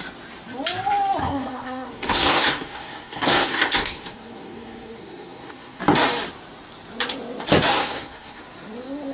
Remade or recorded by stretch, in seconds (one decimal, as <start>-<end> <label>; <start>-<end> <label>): 0.0-1.2 recorded; 1.2-5.8 remade; 5.8-7.7 recorded; 7.7-8.4 remade; 8.4-9.1 recorded